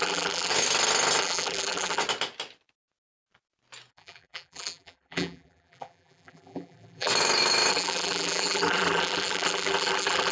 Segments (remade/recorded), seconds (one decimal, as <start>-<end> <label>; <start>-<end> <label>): 0.0-0.5 remade; 0.5-1.2 recorded; 1.2-2.0 remade; 2.0-3.9 recorded; 3.9-7.1 remade; 7.1-7.7 recorded; 7.7-10.3 remade